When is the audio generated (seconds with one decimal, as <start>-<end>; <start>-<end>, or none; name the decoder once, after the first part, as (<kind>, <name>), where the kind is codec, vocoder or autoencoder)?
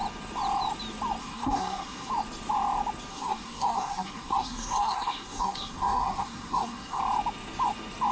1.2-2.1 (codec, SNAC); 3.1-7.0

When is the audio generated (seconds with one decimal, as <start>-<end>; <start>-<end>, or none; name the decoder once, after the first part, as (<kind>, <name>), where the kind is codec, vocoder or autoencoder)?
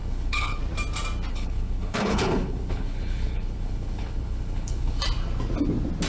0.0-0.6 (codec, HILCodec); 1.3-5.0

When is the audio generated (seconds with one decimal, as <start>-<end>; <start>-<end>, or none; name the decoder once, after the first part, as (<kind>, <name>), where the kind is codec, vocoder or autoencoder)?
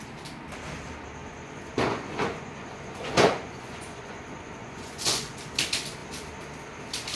1.2-5.4 (vocoder, Vocos)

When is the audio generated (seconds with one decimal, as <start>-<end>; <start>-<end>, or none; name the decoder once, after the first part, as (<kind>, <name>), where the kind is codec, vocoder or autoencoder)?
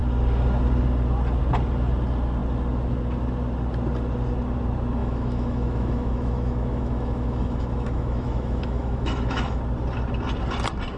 5.0-9.6 (autoencoder, DAC-VAE)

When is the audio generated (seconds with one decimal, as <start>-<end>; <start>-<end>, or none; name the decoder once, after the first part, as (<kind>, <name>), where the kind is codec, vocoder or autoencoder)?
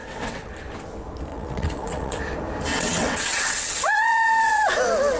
0.0-0.5 (vocoder, WaveNeXt); 1.3-2.2; 2.7-4.7